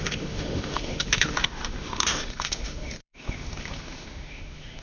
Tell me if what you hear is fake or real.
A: fake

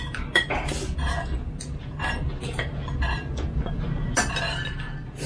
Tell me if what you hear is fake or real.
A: real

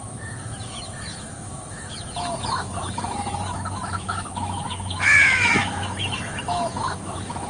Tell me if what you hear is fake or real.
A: fake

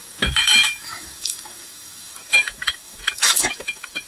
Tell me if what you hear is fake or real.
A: fake